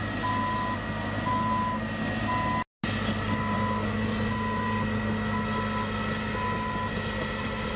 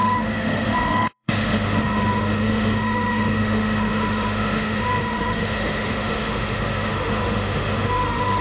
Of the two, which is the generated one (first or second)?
second